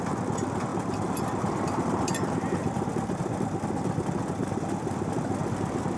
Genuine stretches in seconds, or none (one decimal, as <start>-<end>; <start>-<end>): 0.0-6.0